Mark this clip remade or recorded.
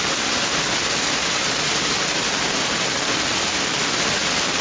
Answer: recorded